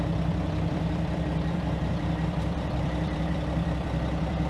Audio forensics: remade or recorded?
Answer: remade